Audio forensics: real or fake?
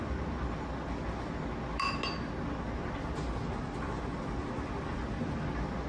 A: real